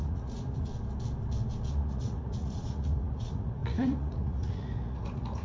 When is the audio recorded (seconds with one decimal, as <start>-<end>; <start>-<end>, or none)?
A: 0.7-1.7